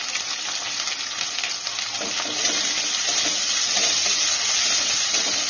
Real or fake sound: real